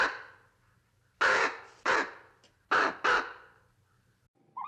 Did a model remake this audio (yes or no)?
no